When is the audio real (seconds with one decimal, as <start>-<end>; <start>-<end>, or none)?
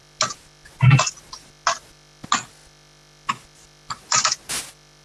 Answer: 0.0-5.0